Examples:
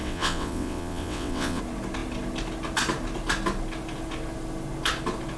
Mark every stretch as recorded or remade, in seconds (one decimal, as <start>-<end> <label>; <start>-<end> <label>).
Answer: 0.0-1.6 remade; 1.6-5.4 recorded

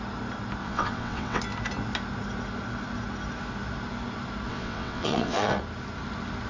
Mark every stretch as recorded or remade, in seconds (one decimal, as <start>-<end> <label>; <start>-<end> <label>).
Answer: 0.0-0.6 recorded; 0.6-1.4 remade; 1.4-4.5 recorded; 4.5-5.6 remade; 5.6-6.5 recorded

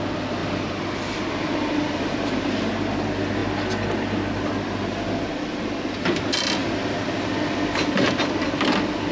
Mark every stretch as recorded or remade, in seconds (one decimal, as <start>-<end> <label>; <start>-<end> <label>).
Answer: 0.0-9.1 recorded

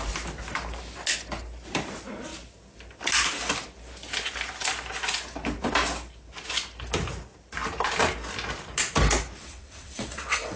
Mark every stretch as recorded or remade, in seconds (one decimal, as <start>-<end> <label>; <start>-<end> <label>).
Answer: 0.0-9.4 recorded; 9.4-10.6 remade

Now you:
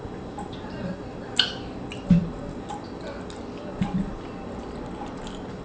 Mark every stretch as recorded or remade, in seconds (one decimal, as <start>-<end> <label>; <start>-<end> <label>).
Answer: 0.0-5.6 recorded

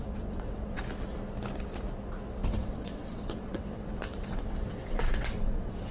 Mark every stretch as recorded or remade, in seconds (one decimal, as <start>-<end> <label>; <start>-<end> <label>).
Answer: 0.0-0.8 remade; 0.8-2.4 recorded; 2.4-5.9 remade